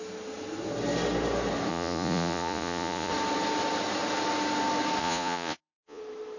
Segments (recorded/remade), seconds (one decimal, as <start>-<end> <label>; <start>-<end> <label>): 0.0-1.7 recorded; 1.7-3.1 remade; 3.1-5.0 recorded; 5.0-6.0 remade; 6.0-6.4 recorded

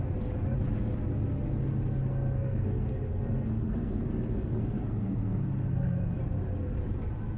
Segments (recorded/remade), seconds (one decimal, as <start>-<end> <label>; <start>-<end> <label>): 0.0-2.0 recorded; 2.0-6.2 remade; 6.2-7.4 recorded

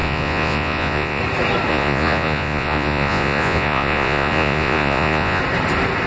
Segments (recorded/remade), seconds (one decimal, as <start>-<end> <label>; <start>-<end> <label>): 0.0-1.2 remade; 1.2-1.7 recorded; 1.7-5.4 remade; 5.4-6.1 recorded

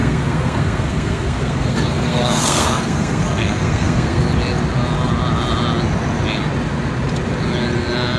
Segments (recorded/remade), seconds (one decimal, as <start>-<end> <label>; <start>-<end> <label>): 0.0-4.2 remade; 4.2-8.2 recorded

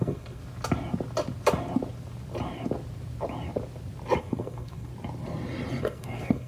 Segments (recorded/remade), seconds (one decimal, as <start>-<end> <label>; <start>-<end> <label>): 0.0-0.4 remade; 0.4-4.2 recorded; 4.2-4.9 remade; 4.9-5.8 recorded; 5.8-6.5 remade

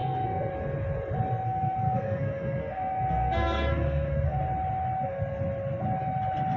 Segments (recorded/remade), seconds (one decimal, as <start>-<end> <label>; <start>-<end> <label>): 0.0-0.5 remade; 0.5-1.3 recorded; 1.3-4.4 remade; 4.4-6.6 recorded

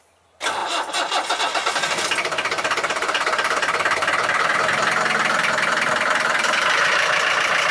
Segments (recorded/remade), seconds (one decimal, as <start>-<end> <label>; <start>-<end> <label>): 0.0-7.7 recorded

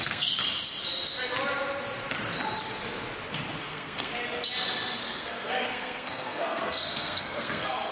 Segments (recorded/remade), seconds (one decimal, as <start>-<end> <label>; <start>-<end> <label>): 0.0-0.4 remade; 0.4-3.6 recorded; 3.6-4.1 remade; 4.1-5.0 recorded; 5.0-7.9 remade